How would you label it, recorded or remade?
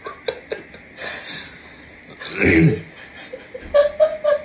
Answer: recorded